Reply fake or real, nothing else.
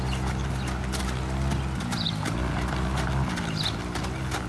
real